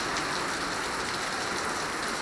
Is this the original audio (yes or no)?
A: yes